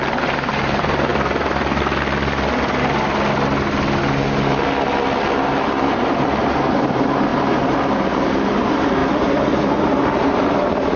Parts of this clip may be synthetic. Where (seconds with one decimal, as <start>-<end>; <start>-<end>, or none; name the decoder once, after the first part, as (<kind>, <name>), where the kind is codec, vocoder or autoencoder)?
0.0-1.1 (vocoder, BigVGAN v2); 5.9-11.0